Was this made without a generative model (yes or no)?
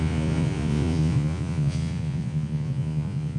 no